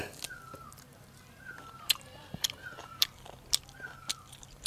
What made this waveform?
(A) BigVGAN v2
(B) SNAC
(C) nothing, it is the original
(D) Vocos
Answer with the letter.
A